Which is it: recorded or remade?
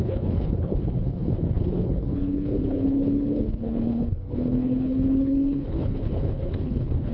remade